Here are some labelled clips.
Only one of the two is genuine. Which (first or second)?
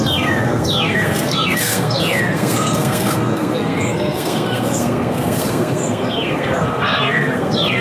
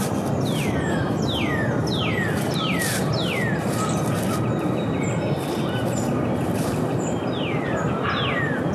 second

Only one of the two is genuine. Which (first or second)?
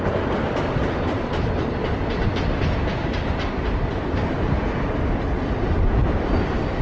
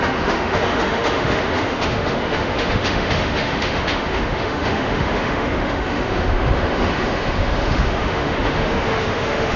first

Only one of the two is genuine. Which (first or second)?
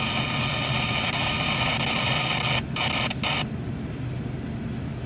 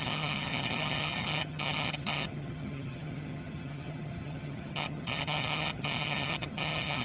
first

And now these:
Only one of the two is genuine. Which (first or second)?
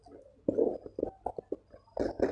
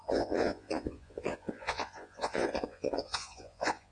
first